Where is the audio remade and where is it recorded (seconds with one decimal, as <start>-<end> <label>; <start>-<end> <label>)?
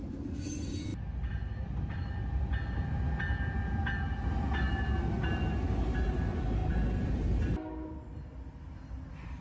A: 0.0-9.4 recorded